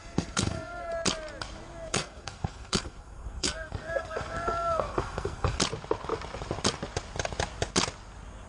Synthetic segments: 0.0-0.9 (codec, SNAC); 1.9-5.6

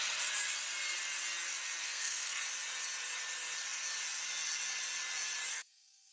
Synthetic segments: 1.8-2.4 (codec, SNAC); 5.5-6.1